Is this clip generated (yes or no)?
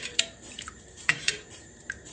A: yes